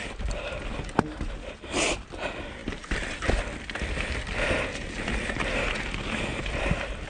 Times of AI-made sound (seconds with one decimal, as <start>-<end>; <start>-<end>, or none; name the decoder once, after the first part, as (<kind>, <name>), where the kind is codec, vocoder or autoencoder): 2.6-3.4 (vocoder, BigVGAN v2); 6.3-7.1